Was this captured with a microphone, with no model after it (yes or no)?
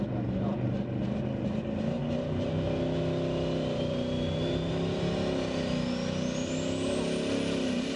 yes